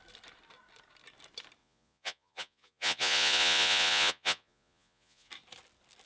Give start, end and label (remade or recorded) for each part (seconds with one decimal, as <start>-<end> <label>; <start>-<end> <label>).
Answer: 0.0-1.6 recorded; 1.6-5.3 remade; 5.3-6.1 recorded